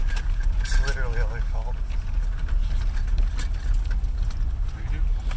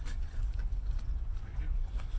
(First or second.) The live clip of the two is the first